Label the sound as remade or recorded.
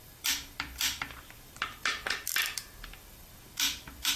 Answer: remade